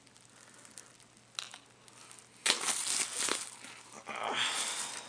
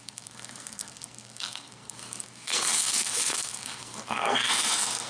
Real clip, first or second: first